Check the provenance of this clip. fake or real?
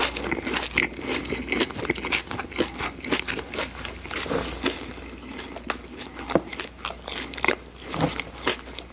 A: real